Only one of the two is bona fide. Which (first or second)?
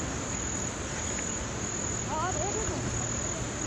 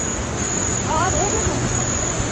first